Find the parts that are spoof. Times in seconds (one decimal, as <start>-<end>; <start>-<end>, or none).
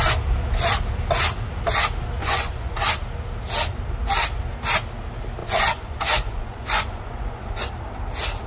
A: 2.2-2.8; 5.4-7.7